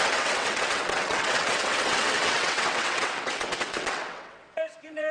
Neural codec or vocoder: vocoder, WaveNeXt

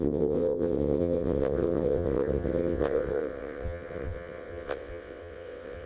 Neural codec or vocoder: vocoder, WaveNeXt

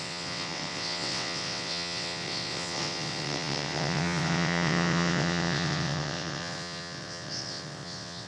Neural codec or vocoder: vocoder, WaveNeXt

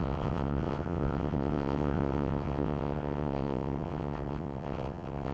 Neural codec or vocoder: vocoder, WaveNeXt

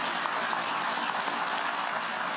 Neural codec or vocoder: none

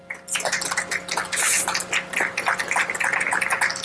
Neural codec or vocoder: none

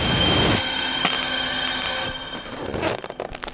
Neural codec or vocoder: none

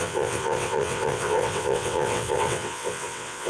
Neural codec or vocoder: vocoder, WaveNeXt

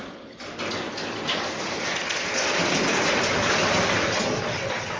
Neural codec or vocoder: none